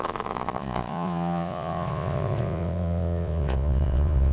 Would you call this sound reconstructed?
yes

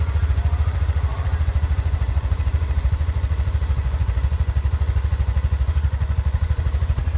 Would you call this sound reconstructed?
yes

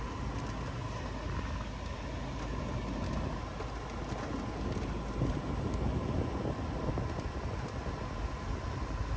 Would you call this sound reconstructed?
no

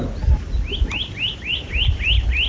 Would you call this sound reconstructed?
no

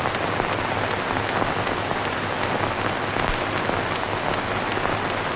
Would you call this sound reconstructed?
no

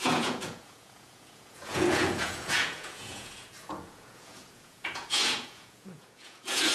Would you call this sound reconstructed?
yes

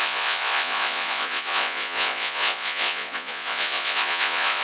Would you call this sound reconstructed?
yes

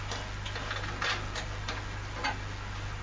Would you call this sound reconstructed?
no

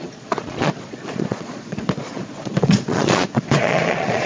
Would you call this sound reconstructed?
yes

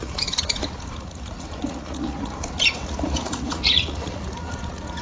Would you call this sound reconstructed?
yes